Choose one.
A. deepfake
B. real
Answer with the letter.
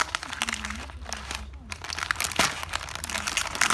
B